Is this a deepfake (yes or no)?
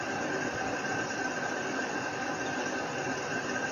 no